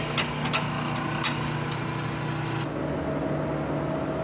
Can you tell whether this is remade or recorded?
recorded